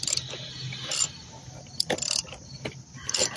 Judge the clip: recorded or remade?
recorded